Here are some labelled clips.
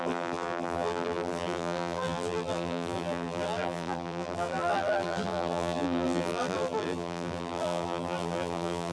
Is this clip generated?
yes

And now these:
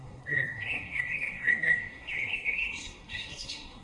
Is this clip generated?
yes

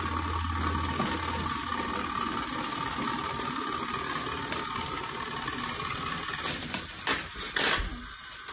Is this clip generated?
no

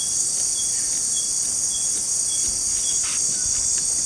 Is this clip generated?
no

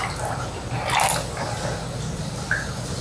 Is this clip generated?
no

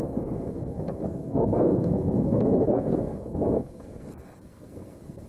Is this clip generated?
yes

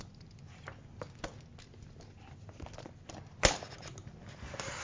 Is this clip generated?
no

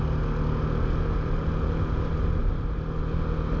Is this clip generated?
no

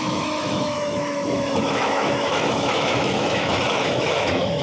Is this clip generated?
yes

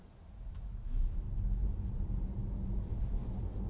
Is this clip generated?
no